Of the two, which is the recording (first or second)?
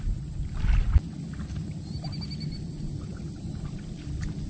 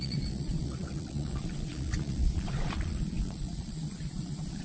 first